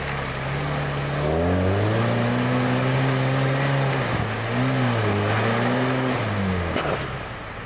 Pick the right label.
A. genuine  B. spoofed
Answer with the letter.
A